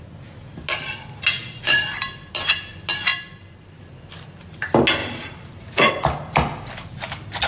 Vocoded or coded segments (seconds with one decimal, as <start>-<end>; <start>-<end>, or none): 1.4-2.3; 5.0-5.9

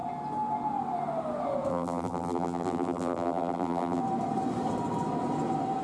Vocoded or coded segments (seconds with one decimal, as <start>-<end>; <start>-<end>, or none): 1.7-4.0

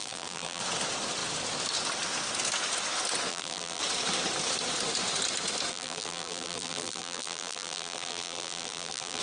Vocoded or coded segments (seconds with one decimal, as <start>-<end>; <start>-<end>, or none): 0.0-0.6; 3.3-3.8; 5.7-9.2

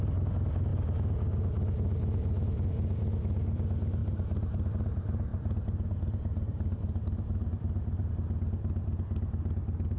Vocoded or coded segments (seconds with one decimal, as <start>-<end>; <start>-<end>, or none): 4.0-4.7; 5.3-8.1

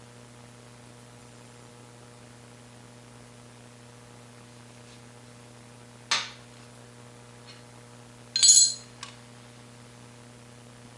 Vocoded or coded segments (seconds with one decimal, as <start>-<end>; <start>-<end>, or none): 1.2-1.7

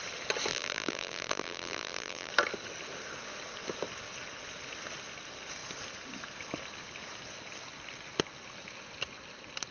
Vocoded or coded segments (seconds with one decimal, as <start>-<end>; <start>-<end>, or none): 0.5-2.3

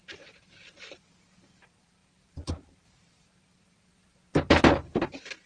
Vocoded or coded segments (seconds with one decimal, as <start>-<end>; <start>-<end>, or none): 0.0-3.9

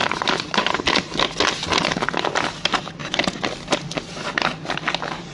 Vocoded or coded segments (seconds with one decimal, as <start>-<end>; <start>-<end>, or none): 0.0-0.9; 3.0-3.5